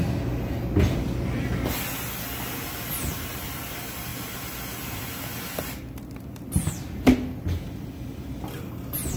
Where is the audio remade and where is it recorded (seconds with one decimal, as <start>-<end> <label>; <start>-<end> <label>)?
0.0-9.2 recorded